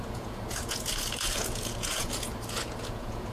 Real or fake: fake